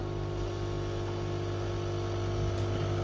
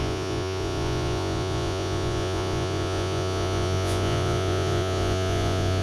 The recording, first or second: first